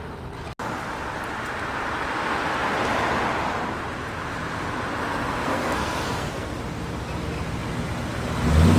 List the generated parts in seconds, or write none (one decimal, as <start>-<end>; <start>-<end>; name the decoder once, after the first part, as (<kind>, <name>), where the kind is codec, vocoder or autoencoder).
5.1-6.6 (codec, SNAC)